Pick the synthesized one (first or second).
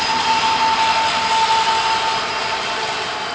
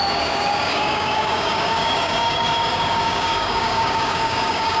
second